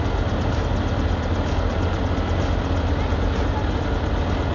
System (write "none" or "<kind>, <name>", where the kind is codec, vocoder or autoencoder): none